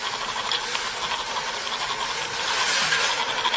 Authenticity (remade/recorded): recorded